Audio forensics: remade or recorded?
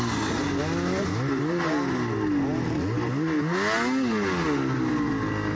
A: recorded